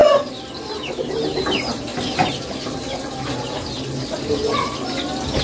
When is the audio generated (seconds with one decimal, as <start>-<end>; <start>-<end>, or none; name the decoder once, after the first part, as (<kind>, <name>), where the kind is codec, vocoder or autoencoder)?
none